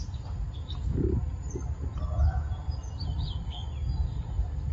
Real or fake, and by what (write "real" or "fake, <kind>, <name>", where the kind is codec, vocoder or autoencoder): real